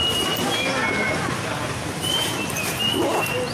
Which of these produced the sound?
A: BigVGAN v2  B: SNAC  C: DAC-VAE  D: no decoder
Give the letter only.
D